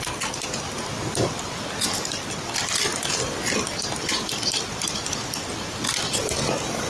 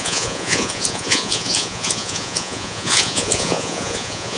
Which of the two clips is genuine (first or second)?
first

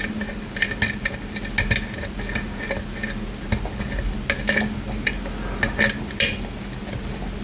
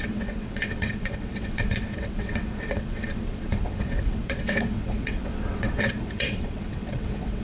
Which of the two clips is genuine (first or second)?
first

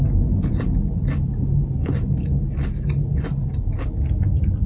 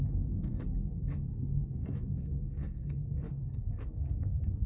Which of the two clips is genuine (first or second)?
first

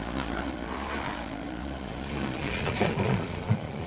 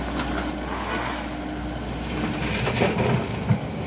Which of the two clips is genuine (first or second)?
second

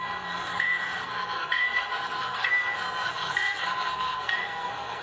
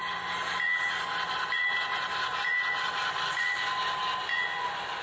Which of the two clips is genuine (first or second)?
second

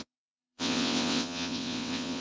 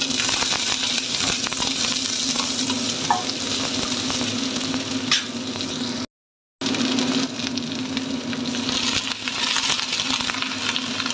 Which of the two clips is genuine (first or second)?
second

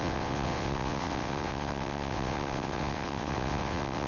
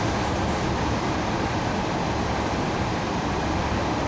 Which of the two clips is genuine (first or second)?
second